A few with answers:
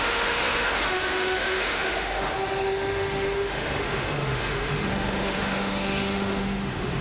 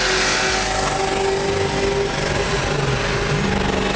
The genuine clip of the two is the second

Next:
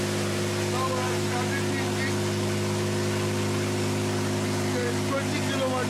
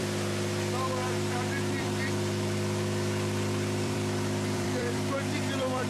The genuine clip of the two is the first